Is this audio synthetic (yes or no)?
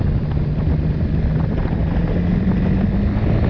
no